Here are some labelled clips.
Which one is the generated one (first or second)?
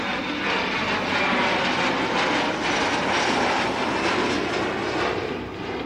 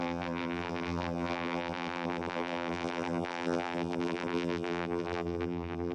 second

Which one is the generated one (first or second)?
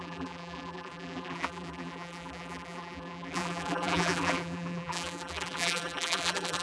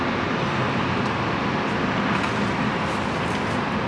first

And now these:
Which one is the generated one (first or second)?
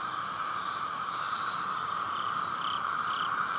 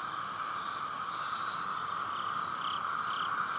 first